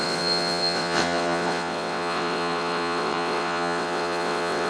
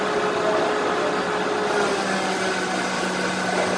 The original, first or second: second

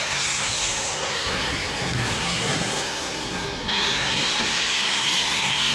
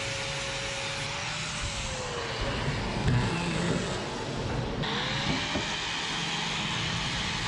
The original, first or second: second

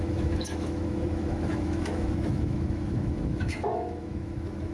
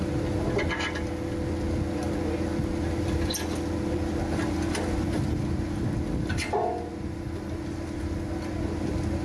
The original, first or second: second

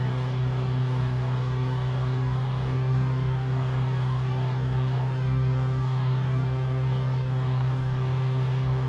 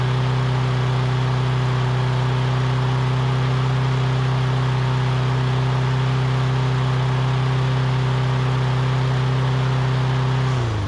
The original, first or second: second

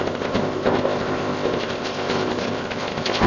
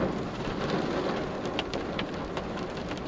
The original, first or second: second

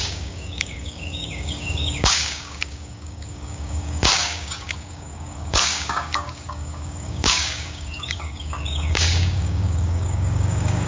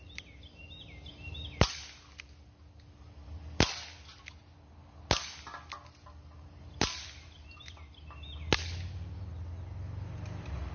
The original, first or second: second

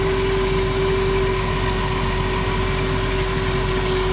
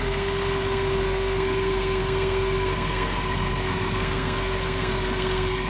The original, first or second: first